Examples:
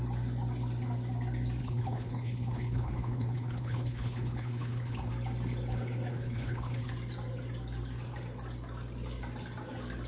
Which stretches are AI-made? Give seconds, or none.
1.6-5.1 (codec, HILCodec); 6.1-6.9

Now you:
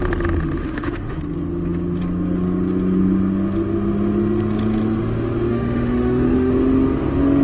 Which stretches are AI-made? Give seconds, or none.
0.6-1.2 (autoencoder, DAC-VAE); 5.5-6.5

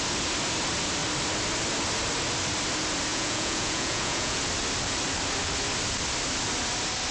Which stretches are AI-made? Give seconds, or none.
3.1-4.4 (vocoder, Vocos)

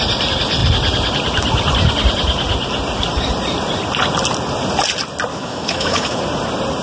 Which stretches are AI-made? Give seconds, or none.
5.3-6.2 (autoencoder, DAC-VAE)

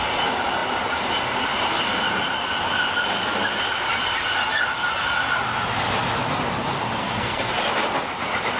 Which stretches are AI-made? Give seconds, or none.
7.0-7.5 (codec, SNAC)

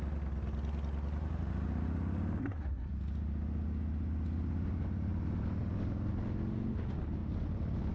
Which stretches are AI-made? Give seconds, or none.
2.4-2.9 (codec, SNAC)

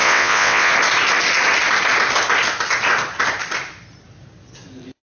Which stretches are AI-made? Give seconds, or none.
0.0-0.7 (vocoder, WaveNeXt)